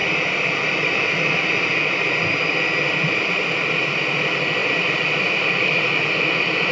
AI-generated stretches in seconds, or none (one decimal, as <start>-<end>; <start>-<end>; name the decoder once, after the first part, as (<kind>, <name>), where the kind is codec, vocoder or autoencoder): 0.0-4.0 (vocoder, BigVGAN v2); 4.6-6.0